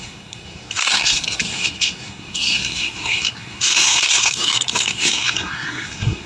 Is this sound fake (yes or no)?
yes